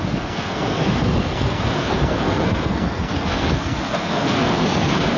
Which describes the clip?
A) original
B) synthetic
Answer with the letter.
B